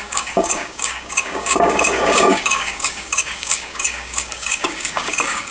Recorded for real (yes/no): no